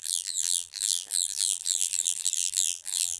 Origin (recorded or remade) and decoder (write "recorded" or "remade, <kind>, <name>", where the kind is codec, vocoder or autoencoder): remade, vocoder, BigVGAN v2